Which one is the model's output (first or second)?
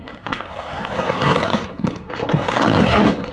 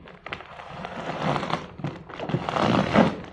first